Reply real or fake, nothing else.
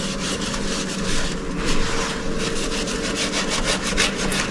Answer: real